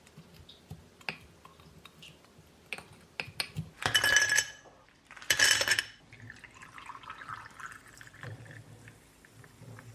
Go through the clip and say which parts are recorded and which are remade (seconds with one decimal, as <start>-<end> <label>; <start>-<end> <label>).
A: 0.0-9.9 recorded